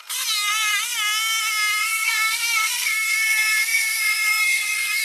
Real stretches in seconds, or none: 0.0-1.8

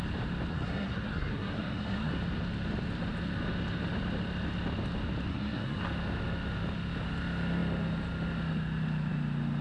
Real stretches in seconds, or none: 0.0-0.5; 2.1-5.3; 5.8-9.6

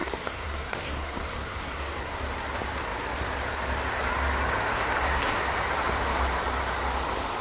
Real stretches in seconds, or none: 2.2-4.7; 5.4-7.4

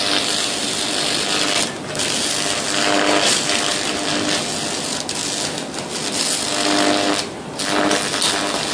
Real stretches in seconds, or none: 0.0-8.7

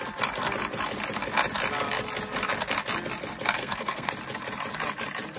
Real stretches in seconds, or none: 0.0-3.6; 4.1-5.4

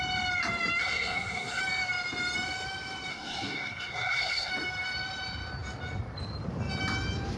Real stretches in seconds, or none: 0.0-0.8; 1.6-3.1; 4.5-7.4